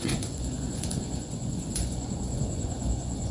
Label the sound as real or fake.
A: fake